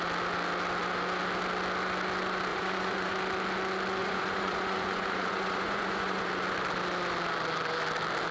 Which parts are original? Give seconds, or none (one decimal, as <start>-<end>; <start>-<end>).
0.0-2.5; 3.1-4.0; 6.3-8.3